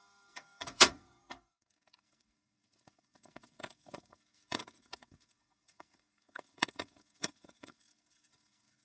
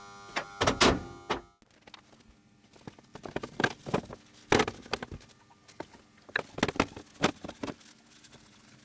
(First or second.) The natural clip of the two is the second